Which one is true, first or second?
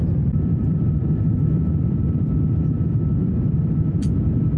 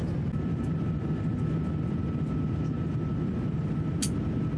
second